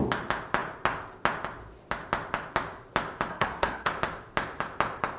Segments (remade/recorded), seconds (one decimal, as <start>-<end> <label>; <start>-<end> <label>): 0.0-3.3 recorded; 3.3-3.9 remade; 3.9-5.2 recorded